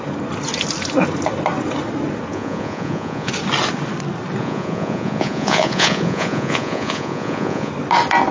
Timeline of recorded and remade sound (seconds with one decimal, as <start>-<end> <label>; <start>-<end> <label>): 0.0-2.3 recorded; 2.3-3.3 remade; 3.3-4.4 recorded; 4.4-7.7 remade; 7.7-8.3 recorded